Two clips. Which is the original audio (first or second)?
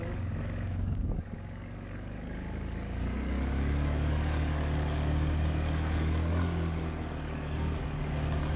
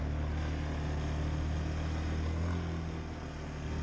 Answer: second